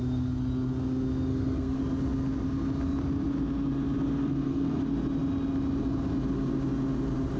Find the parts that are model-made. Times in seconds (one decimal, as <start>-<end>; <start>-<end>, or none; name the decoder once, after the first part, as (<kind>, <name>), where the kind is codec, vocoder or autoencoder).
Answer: 1.3-1.8 (codec, SNAC); 4.2-4.8